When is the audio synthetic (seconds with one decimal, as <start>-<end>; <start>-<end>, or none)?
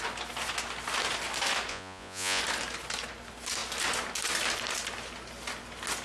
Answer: 1.7-2.4